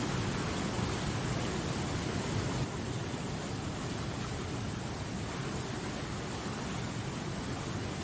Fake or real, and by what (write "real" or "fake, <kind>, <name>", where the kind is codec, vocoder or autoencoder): real